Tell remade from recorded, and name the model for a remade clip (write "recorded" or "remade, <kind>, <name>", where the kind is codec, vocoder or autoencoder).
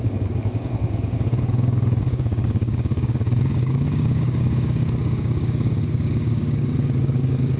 remade, codec, DAC